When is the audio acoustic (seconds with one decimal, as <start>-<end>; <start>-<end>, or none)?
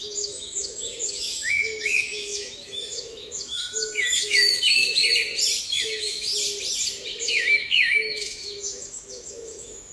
5.0-5.6; 6.3-7.2